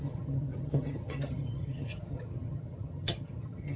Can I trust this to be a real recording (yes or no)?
no